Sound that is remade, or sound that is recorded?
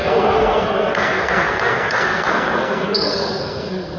remade